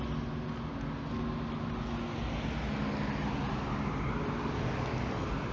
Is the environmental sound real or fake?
real